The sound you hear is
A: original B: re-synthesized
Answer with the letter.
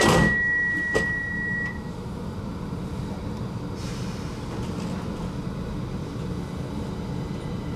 A